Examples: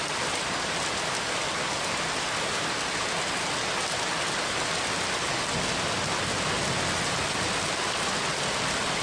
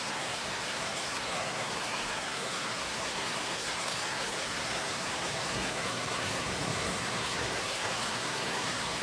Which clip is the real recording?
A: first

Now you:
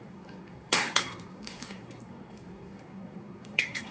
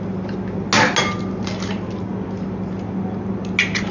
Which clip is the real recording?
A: second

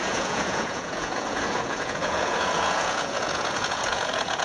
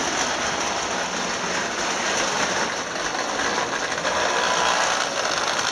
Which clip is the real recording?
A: second